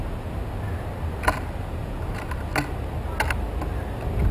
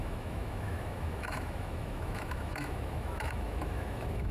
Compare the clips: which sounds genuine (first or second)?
first